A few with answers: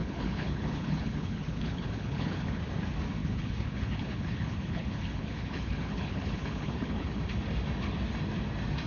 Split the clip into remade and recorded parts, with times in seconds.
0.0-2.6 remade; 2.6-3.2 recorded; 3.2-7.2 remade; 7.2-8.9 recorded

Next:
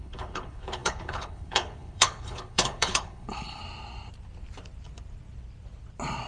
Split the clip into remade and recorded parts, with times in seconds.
0.0-3.6 remade; 3.6-6.3 recorded

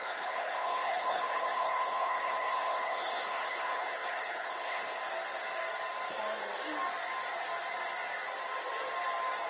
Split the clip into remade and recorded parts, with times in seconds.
0.0-5.0 remade; 5.0-9.5 recorded